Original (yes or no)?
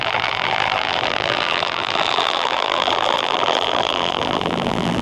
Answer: no